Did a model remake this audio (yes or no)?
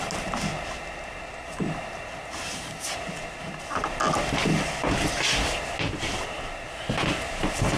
no